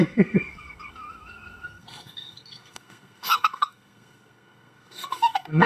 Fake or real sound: fake